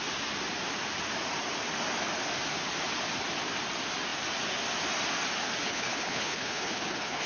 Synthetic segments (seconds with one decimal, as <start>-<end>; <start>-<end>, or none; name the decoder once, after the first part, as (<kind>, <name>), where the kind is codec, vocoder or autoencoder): 5.6-7.3 (codec, HILCodec)